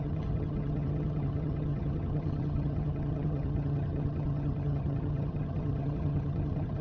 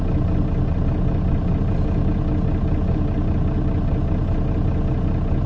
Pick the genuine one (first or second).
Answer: second